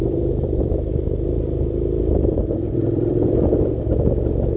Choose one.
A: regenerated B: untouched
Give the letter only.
A